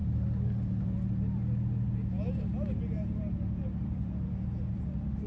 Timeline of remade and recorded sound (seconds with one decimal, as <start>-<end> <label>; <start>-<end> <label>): 0.0-5.3 recorded